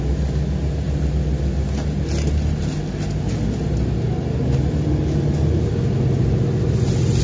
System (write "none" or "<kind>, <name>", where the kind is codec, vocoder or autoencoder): none